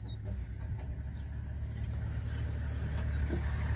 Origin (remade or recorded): recorded